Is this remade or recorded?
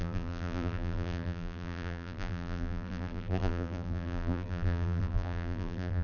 remade